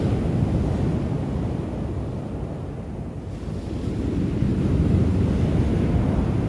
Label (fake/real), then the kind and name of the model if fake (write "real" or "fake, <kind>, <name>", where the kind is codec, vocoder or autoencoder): real